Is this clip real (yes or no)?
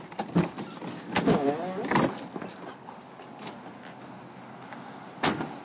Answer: yes